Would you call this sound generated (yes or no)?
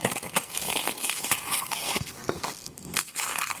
yes